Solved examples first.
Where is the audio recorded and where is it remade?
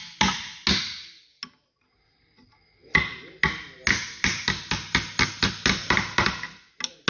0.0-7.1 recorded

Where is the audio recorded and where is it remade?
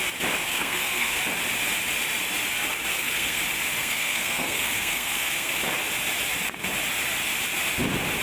0.0-0.5 recorded; 0.5-1.2 remade; 1.2-2.9 recorded; 2.9-3.4 remade; 3.4-3.8 recorded; 3.8-5.6 remade; 5.6-8.2 recorded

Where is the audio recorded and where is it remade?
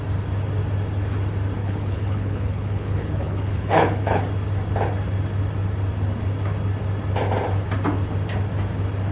0.0-1.6 recorded; 1.6-4.2 remade; 4.2-9.1 recorded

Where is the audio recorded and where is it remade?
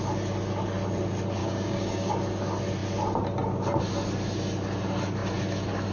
0.0-1.4 recorded; 1.4-2.1 remade; 2.1-5.9 recorded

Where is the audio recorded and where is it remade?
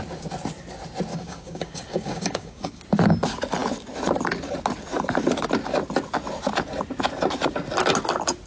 0.0-1.1 recorded; 1.1-2.8 remade; 2.8-8.5 recorded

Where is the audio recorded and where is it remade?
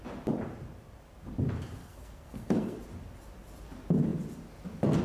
0.0-1.8 recorded; 1.8-2.8 remade; 2.8-5.0 recorded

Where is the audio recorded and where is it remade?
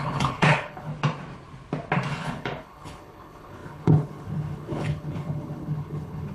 0.0-0.9 remade; 0.9-2.1 recorded; 2.1-6.3 remade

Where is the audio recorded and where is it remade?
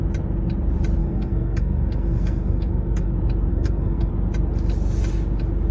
0.0-1.0 recorded; 1.0-3.1 remade; 3.1-3.5 recorded; 3.5-4.1 remade; 4.1-5.7 recorded